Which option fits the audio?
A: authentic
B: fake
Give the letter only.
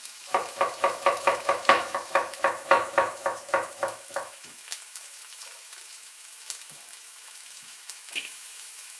B